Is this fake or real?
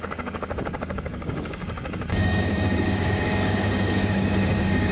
fake